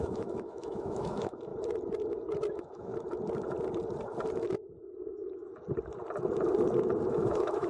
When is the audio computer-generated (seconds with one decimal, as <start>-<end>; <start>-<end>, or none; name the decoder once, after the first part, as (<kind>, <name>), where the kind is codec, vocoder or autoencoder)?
0.0-1.5 (autoencoder, DAC-VAE); 2.5-2.9; 5.1-5.5; 7.1-7.7